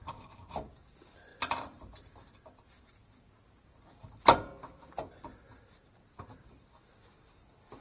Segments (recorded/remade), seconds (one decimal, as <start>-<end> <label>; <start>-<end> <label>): 0.0-1.3 recorded; 1.3-2.3 remade; 2.3-7.8 recorded